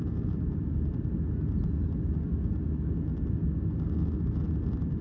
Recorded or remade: recorded